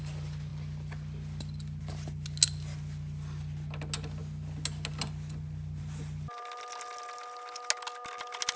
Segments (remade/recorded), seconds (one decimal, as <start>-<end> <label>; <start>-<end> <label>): 0.0-8.6 recorded